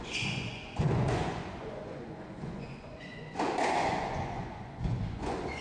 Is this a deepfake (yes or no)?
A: yes